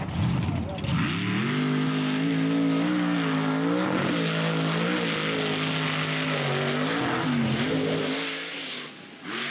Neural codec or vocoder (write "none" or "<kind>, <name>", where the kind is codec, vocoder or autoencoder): none